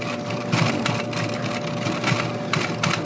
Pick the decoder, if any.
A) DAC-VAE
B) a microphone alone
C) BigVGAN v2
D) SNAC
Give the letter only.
B